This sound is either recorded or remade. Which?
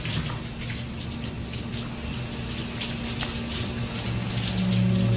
recorded